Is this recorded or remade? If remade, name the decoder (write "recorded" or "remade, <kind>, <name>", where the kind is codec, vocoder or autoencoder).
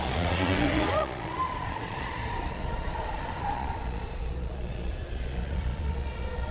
remade, vocoder, Vocos